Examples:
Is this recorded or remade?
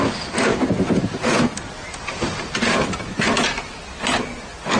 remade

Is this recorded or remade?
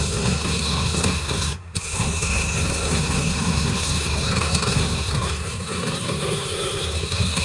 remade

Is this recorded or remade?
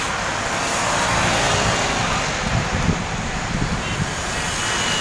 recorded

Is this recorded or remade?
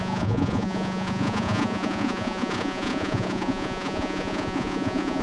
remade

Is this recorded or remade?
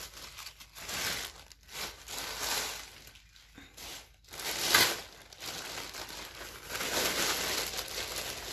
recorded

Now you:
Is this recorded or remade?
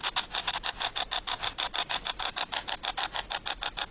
recorded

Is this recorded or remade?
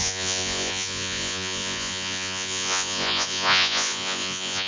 remade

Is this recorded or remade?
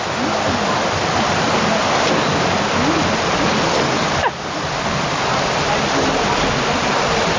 recorded